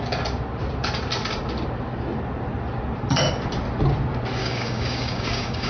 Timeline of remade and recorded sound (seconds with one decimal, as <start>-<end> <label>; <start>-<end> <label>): 0.0-4.4 recorded; 4.4-5.7 remade